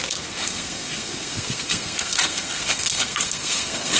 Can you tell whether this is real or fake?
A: fake